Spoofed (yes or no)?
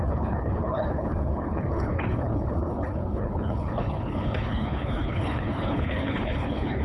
yes